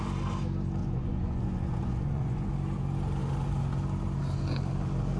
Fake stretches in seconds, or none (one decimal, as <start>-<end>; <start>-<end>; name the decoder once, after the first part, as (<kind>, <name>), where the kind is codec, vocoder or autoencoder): 0.8-2.5 (vocoder, Vocos)